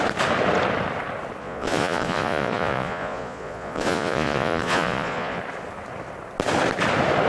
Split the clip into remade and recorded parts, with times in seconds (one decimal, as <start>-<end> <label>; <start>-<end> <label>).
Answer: 0.0-1.4 recorded; 1.4-5.4 remade; 5.4-7.3 recorded